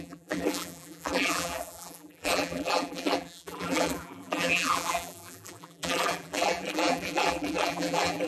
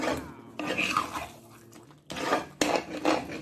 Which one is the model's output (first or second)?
first